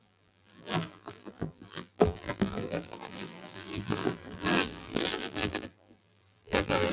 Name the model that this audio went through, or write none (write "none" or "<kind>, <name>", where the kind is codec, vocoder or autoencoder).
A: vocoder, BigVGAN v2